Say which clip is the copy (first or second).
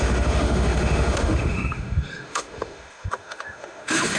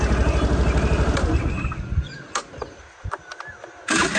first